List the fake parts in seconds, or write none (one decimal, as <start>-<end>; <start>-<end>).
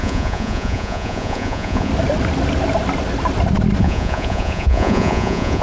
0.0-1.9; 3.8-5.6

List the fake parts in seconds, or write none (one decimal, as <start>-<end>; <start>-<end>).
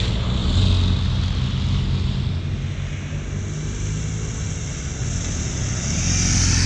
none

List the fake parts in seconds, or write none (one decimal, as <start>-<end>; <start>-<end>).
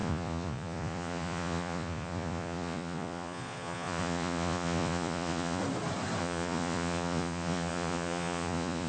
0.0-5.6; 6.2-8.9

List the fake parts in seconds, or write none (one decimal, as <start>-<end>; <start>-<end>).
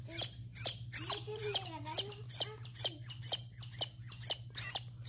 none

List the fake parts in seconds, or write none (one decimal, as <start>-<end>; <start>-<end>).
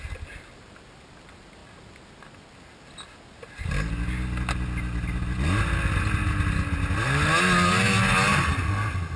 none